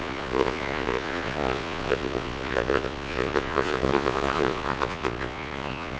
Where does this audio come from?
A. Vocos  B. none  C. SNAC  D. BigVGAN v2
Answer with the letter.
A